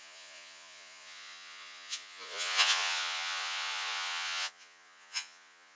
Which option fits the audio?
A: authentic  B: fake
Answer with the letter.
B